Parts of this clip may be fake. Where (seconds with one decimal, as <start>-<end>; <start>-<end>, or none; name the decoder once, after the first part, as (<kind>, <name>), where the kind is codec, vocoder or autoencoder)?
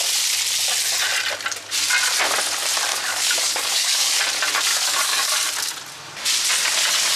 2.9-4.2 (codec, DAC); 4.7-5.4